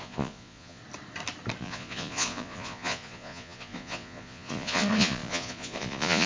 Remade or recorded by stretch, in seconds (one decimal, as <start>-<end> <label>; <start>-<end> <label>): 0.0-0.8 remade; 0.8-1.6 recorded; 1.6-6.3 remade